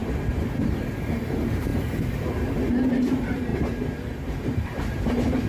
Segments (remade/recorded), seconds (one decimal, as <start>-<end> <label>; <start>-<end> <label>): 0.0-0.9 recorded; 0.9-1.7 remade; 1.7-3.0 recorded; 3.0-5.5 remade